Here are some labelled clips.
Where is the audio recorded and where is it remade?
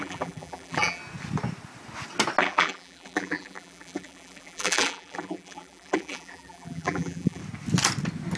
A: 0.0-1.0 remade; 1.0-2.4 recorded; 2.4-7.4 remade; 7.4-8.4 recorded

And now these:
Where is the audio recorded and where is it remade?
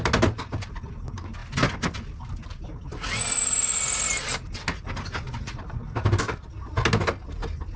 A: 0.0-7.8 recorded